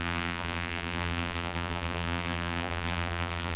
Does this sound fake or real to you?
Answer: fake